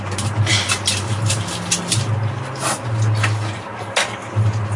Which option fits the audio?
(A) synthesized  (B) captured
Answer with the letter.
B